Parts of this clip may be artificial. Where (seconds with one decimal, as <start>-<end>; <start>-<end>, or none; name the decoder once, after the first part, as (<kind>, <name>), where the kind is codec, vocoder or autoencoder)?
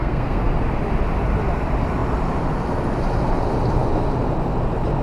0.0-0.5 (codec, SNAC)